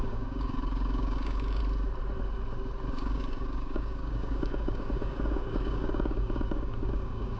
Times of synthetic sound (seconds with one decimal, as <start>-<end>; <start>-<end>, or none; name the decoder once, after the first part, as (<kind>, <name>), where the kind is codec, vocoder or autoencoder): 0.0-1.6 (codec, DAC); 2.9-7.4

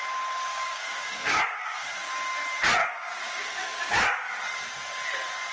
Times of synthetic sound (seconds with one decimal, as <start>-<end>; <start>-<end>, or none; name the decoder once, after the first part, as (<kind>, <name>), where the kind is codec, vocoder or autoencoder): 0.5-2.1 (codec, DAC); 2.8-4.4